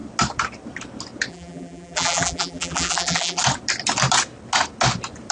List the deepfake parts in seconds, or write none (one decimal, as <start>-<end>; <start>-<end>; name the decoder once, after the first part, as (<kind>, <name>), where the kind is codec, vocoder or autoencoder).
1.3-3.4 (vocoder, BigVGAN v2)